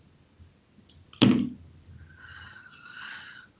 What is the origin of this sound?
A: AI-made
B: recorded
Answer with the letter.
B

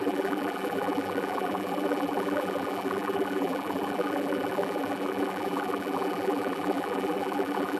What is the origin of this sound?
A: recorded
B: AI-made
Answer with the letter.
B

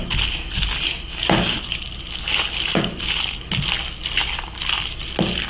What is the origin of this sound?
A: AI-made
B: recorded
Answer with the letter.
B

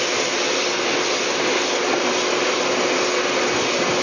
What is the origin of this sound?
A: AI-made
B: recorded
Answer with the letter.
B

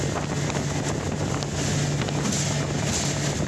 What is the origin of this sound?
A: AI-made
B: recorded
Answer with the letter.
B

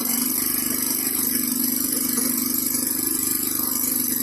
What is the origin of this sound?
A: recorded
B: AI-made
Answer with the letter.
B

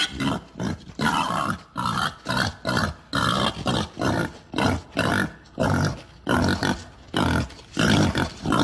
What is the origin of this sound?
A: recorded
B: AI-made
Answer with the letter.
A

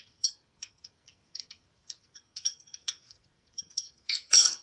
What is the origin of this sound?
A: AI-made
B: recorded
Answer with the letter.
A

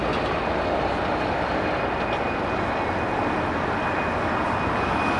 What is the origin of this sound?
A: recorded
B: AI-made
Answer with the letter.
A